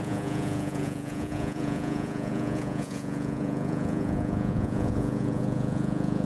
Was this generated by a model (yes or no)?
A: yes